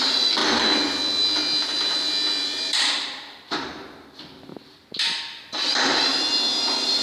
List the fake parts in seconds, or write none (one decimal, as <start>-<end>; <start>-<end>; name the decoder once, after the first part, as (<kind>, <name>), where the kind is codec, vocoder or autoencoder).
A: none